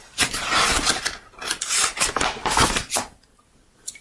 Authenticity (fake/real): real